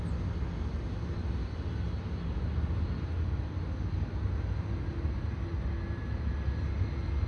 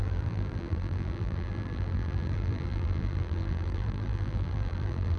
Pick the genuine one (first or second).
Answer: first